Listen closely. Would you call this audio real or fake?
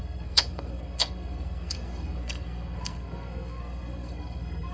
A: fake